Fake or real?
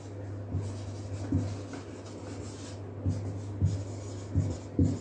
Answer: real